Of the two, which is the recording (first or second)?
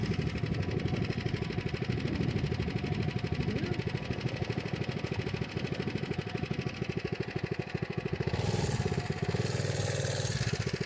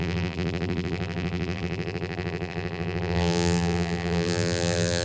first